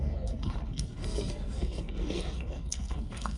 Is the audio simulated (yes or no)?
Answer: yes